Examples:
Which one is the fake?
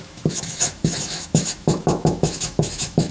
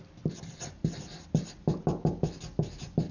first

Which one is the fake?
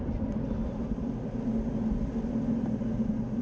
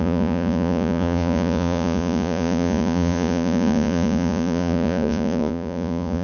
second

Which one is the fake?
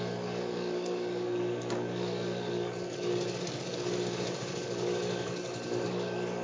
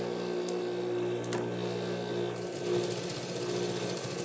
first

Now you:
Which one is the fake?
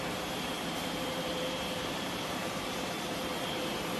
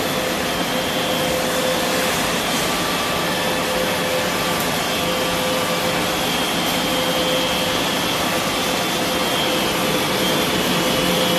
first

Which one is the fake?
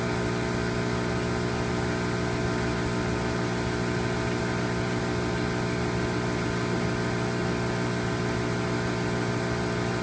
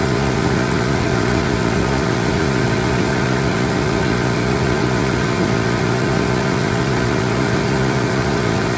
second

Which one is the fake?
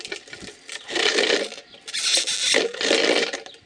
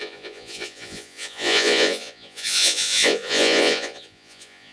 second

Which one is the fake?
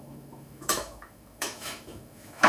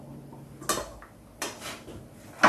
first